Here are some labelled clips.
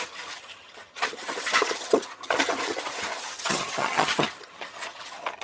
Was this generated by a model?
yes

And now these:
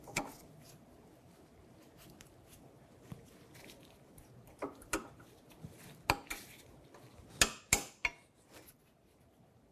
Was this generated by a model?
no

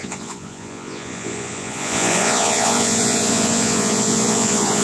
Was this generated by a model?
yes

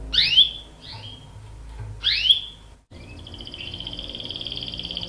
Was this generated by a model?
no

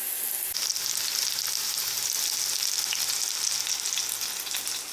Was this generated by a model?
no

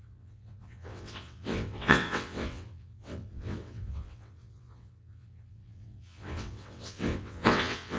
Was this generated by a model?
yes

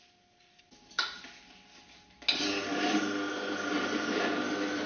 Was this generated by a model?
no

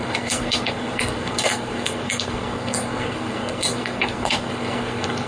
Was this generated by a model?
yes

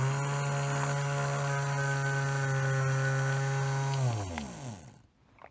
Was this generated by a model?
no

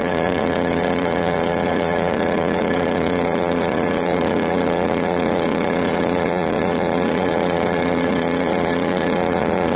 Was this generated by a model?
yes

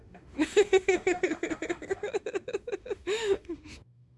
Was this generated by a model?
yes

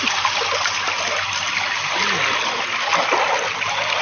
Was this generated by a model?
no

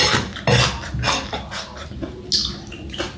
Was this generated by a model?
no